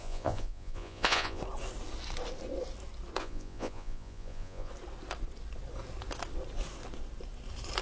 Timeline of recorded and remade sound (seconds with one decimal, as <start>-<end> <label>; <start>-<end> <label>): 0.0-1.4 remade; 1.4-3.2 recorded; 3.2-4.7 remade; 4.7-7.8 recorded